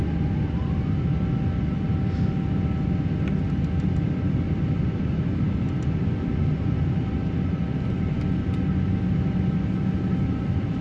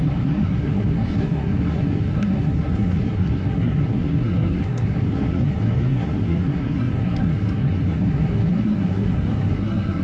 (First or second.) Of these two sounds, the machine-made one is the second